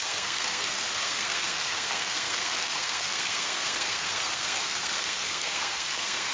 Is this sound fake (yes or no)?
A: yes